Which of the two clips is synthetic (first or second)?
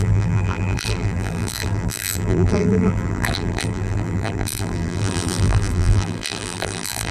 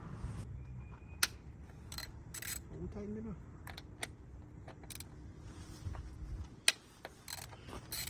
first